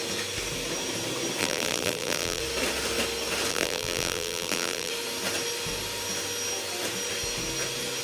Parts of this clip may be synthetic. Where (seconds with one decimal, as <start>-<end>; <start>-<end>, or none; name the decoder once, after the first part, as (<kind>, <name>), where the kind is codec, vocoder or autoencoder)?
1.4-2.4 (vocoder, BigVGAN v2); 3.5-4.9